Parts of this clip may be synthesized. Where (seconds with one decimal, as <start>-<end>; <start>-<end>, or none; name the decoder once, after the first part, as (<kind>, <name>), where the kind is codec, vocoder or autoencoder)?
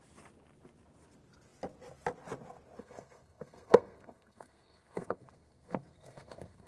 2.8-6.7 (codec, SNAC)